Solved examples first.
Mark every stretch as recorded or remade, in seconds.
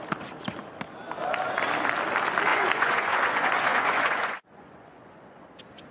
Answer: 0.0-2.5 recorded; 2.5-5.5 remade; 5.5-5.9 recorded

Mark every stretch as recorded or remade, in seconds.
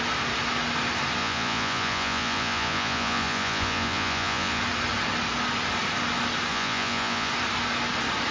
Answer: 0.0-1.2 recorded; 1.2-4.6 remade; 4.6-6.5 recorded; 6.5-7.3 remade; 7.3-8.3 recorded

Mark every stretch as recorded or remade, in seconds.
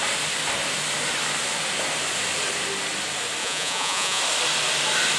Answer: 0.0-3.4 recorded; 3.4-4.2 remade; 4.2-5.2 recorded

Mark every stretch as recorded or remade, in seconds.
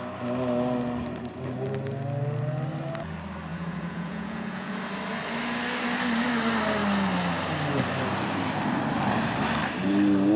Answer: 0.0-3.5 recorded; 3.5-4.7 remade; 4.7-10.4 recorded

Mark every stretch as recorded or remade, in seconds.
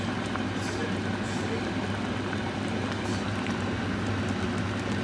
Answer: 0.0-5.0 recorded